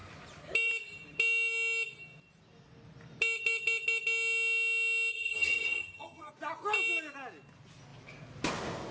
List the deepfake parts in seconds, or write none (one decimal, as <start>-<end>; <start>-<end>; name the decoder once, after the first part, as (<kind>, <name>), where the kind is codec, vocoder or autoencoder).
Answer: 5.1-6.3 (vocoder, HiFi-GAN)